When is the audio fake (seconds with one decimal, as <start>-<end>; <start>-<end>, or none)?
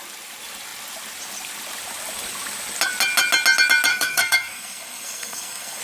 3.9-5.8